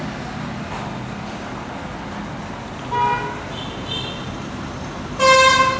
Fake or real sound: real